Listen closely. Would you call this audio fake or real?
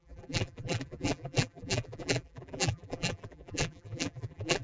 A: fake